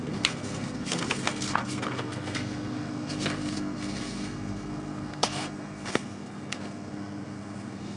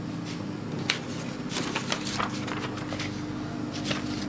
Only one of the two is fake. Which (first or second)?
first